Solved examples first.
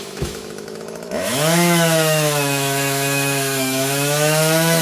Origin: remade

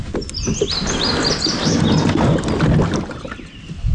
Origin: recorded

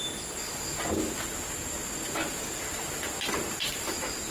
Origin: recorded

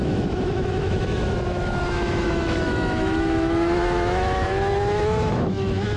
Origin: remade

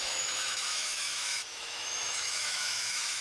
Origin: remade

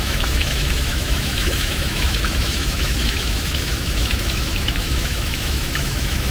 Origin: remade